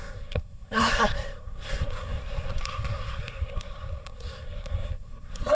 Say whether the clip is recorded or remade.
remade